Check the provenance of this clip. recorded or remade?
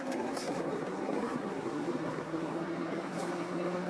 remade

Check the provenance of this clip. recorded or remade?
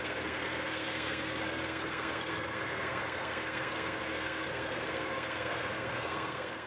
remade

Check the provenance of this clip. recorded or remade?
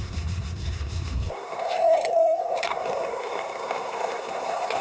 remade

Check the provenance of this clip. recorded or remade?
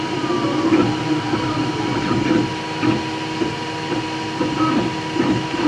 recorded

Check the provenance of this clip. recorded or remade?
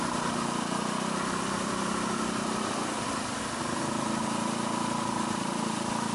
recorded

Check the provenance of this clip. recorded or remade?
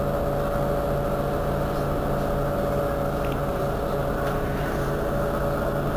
recorded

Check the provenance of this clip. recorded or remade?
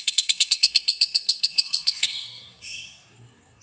remade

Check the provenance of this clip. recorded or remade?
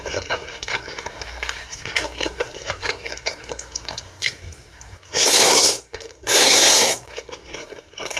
remade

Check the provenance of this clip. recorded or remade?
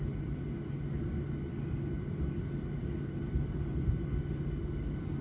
recorded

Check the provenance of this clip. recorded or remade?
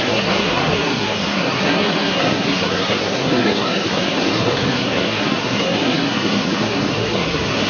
remade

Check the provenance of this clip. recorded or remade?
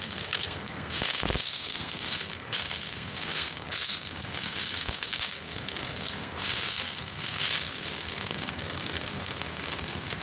remade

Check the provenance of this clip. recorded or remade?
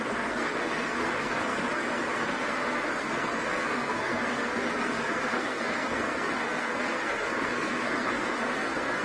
remade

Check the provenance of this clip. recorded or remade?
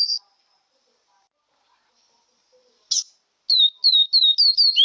recorded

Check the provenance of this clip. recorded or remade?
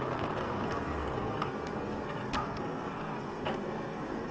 remade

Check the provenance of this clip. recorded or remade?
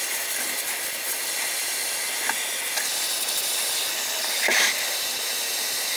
recorded